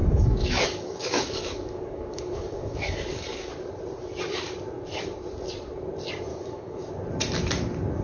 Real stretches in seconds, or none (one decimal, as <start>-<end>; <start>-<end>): 3.5-6.3; 6.9-8.0